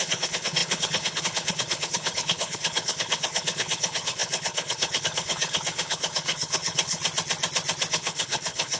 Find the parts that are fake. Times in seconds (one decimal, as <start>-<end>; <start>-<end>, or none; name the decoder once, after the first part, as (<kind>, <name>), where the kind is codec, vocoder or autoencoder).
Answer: 0.0-7.0 (codec, HILCodec); 7.9-8.8